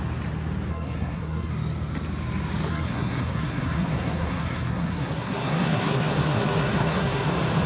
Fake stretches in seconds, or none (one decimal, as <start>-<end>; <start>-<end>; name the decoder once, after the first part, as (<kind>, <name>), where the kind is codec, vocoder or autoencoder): 0.7-1.5 (codec, SNAC); 2.7-7.3

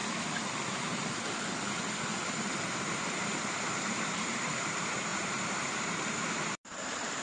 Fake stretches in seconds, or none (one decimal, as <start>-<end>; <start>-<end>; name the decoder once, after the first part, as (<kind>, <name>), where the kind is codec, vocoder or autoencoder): 2.5-7.2 (vocoder, BigVGAN v2)

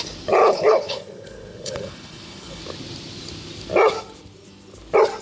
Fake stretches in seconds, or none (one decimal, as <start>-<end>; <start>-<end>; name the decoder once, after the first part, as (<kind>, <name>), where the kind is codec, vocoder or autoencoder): 0.4-2.6 (codec, HILCodec)

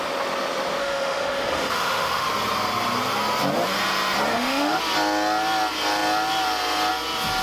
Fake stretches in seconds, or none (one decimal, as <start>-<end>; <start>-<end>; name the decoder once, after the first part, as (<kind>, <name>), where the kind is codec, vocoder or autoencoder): 0.8-2.3 (autoencoder, DAC-VAE); 4.3-4.8